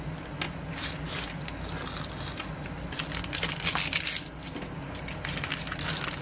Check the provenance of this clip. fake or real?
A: real